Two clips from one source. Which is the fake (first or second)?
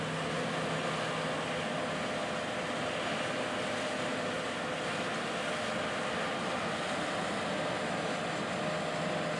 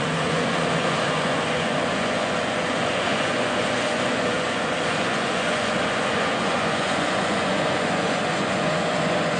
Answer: second